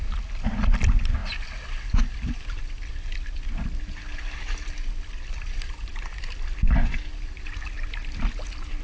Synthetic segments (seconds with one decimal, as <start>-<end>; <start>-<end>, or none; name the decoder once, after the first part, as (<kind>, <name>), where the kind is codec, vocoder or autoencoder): none